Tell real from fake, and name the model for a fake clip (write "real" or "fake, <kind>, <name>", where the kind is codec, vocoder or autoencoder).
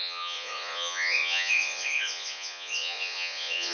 fake, vocoder, Vocos